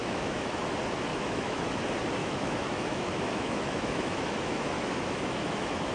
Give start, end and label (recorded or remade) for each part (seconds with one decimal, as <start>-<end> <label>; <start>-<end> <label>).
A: 0.0-0.6 remade; 0.6-1.1 recorded; 1.1-1.8 remade; 1.8-2.2 recorded; 2.2-5.9 remade